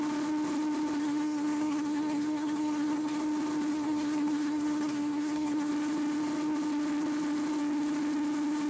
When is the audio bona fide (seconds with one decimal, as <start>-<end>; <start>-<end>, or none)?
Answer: 0.0-1.0; 3.2-3.7; 5.7-8.7